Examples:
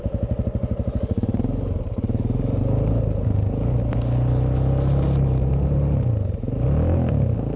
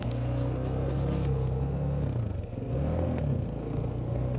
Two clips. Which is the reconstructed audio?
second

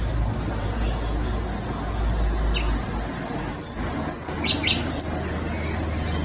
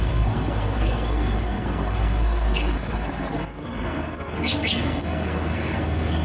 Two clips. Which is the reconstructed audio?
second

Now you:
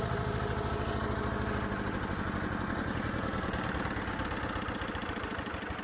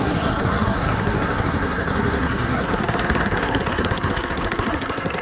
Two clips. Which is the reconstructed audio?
second